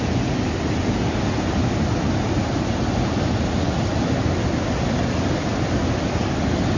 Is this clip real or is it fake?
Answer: real